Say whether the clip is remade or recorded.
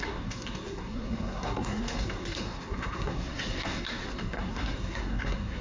remade